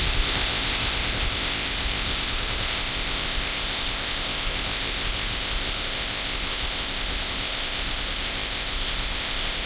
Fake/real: fake